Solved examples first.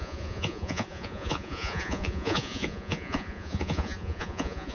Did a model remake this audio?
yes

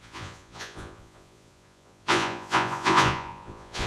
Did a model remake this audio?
yes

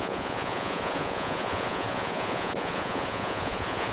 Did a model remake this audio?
yes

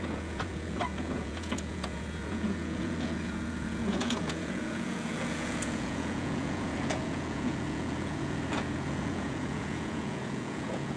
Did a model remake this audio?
yes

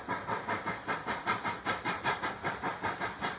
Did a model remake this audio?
no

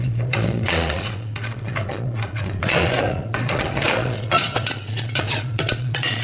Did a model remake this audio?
yes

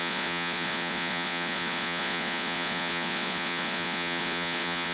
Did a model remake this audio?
yes